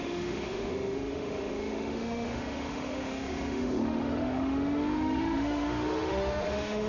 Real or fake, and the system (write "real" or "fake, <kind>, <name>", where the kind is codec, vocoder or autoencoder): fake, autoencoder, DAC-VAE